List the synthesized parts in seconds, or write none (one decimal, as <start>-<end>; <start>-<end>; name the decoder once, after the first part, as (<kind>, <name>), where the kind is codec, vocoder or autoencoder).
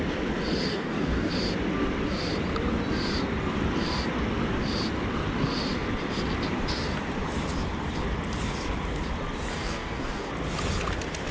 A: 0.7-1.3 (codec, DAC); 9.5-10.3